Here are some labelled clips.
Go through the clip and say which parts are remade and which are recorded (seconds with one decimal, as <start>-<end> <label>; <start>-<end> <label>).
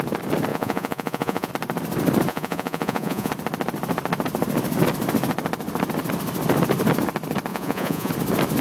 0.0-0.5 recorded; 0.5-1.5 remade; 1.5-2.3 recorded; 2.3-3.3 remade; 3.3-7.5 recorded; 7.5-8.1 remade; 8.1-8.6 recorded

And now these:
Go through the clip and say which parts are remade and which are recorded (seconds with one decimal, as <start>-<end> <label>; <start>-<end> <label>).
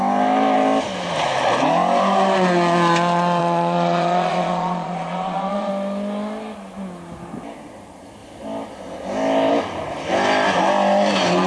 0.0-3.4 recorded; 3.4-5.7 remade; 5.7-11.5 recorded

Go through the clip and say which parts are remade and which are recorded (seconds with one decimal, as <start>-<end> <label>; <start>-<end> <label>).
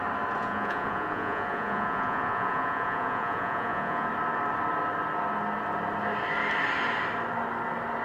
0.0-0.4 recorded; 0.4-4.1 remade; 4.1-8.0 recorded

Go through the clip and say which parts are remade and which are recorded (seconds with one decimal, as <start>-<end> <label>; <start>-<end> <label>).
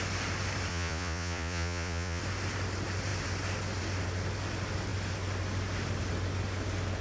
0.0-0.7 recorded; 0.7-2.2 remade; 2.2-7.0 recorded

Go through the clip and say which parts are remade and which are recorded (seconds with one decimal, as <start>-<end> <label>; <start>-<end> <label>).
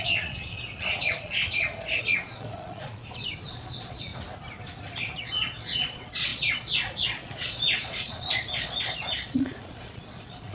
0.0-3.0 remade; 3.0-3.5 recorded; 3.5-4.1 remade; 4.1-5.2 recorded; 5.2-10.5 remade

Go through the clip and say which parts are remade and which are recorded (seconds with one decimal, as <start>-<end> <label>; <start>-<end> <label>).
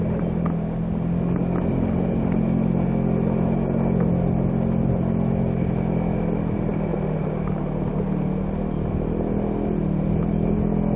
0.0-11.0 recorded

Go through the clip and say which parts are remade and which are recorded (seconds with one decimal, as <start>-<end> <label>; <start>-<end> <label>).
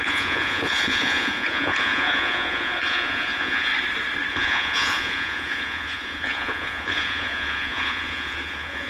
0.0-3.7 remade; 3.7-4.3 recorded; 4.3-8.9 remade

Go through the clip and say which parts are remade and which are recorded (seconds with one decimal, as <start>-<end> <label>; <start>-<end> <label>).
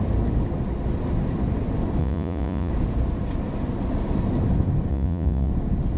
0.0-2.0 recorded; 2.0-2.7 remade; 2.7-4.9 recorded; 4.9-5.5 remade; 5.5-6.0 recorded